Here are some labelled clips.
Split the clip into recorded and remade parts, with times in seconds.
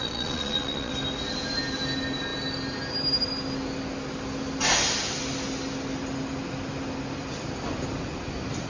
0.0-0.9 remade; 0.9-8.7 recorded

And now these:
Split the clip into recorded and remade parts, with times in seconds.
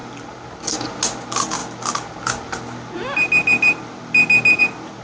0.0-5.0 recorded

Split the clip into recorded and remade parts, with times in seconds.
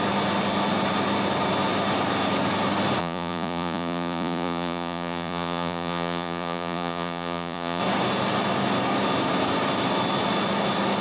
0.0-3.0 recorded; 3.0-7.8 remade; 7.8-11.0 recorded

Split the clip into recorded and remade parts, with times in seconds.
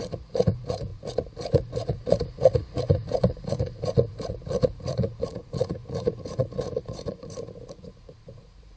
0.0-8.8 remade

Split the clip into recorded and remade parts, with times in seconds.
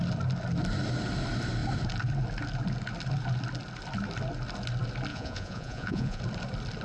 0.0-5.1 recorded; 5.1-6.2 remade; 6.2-6.8 recorded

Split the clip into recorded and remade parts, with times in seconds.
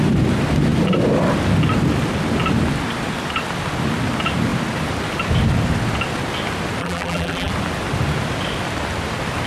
0.0-6.8 recorded; 6.8-7.5 remade; 7.5-9.5 recorded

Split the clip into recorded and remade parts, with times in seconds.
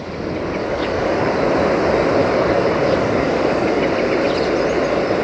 0.0-0.6 recorded; 0.6-1.3 remade; 1.3-2.2 recorded; 2.2-3.8 remade; 3.8-5.2 recorded